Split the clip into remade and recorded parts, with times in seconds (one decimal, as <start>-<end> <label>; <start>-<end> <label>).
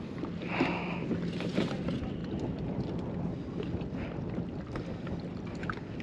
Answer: 0.0-6.0 recorded